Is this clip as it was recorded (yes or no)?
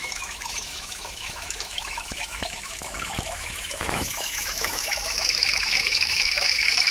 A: no